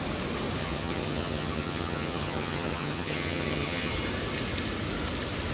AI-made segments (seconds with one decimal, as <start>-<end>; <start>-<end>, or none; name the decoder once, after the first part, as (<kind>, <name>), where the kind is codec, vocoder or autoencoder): 0.6-3.9 (vocoder, HiFi-GAN)